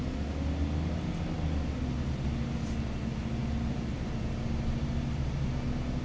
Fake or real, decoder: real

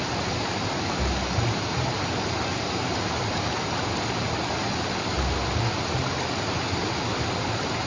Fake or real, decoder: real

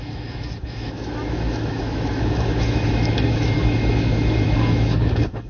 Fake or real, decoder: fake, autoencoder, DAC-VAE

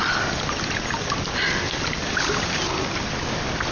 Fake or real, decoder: real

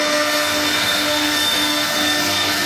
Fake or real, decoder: fake, codec, SNAC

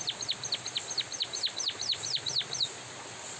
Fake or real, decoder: real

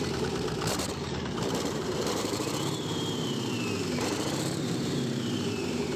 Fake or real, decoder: fake, vocoder, BigVGAN v2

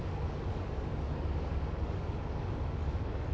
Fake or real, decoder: fake, codec, DAC